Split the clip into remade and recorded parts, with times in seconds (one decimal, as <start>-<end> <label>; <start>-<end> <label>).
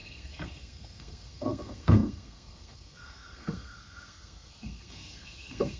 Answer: 0.0-5.8 remade